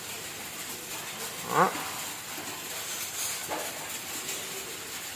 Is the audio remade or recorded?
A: recorded